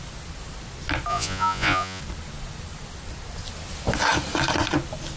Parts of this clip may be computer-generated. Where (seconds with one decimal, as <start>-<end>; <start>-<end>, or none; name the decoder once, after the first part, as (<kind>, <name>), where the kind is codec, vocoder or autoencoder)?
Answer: 1.1-2.0 (vocoder, Vocos)